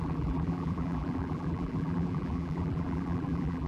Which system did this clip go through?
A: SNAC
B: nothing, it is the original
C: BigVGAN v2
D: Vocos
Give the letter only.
C